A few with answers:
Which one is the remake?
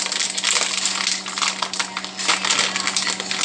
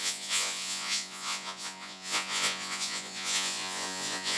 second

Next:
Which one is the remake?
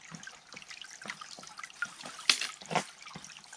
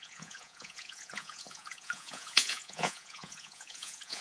second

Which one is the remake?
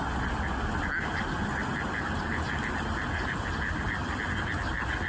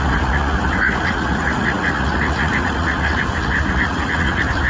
second